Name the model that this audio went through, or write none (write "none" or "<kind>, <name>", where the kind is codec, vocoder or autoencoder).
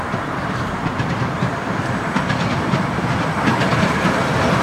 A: none